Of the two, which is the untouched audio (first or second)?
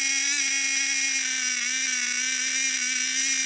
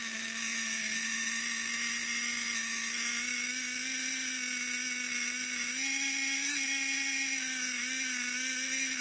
first